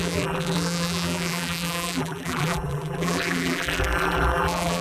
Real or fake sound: fake